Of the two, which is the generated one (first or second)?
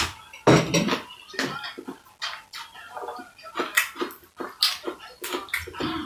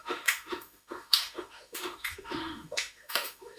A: second